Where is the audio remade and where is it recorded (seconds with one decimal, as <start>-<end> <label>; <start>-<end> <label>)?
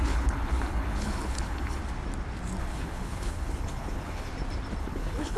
0.0-1.8 remade; 1.8-2.6 recorded; 2.6-4.3 remade; 4.3-4.8 recorded; 4.8-5.4 remade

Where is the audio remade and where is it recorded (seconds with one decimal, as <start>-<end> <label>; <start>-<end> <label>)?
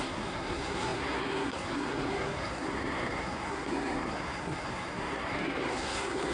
0.0-6.3 remade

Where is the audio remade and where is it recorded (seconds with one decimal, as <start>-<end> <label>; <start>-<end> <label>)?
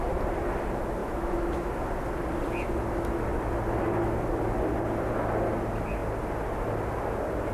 0.0-1.0 recorded; 1.0-1.7 remade; 1.7-7.5 recorded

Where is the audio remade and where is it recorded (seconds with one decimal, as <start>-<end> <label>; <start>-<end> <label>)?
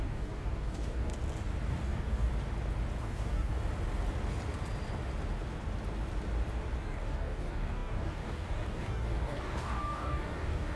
0.0-1.1 remade; 1.1-1.7 recorded; 1.7-2.3 remade; 2.3-3.0 recorded; 3.0-3.5 remade; 3.5-6.8 recorded; 6.8-10.8 remade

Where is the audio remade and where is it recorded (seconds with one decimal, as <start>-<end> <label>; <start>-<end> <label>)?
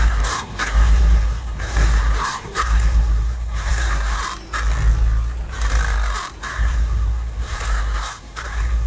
0.0-4.2 remade; 4.2-6.4 recorded; 6.4-8.9 remade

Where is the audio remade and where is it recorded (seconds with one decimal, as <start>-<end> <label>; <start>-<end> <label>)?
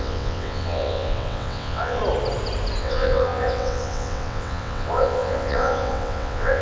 0.0-2.0 remade; 2.0-2.8 recorded; 2.8-6.6 remade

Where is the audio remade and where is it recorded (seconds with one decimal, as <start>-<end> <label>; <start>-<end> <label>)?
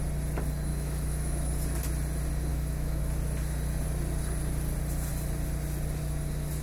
0.0-0.7 recorded; 0.7-1.5 remade; 1.5-2.5 recorded; 2.5-3.0 remade; 3.0-6.6 recorded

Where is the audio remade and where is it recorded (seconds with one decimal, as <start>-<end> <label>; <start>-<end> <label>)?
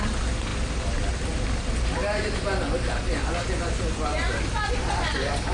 0.0-5.5 recorded